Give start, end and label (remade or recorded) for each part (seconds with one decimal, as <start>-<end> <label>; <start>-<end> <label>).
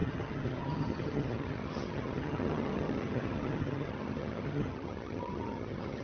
0.0-6.0 remade